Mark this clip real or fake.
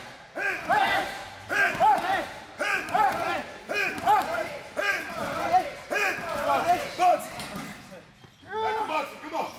fake